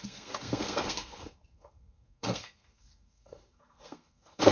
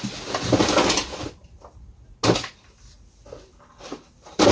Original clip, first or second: second